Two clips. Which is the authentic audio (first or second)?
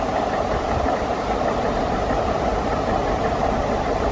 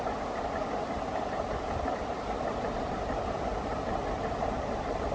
first